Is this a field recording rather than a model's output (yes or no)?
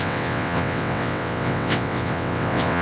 no